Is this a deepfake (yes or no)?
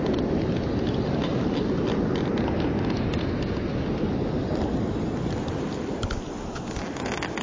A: no